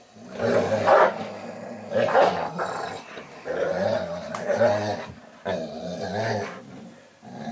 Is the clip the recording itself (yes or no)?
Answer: yes